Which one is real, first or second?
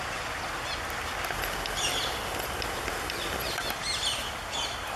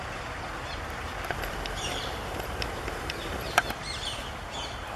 first